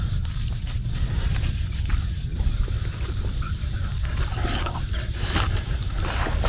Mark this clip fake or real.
real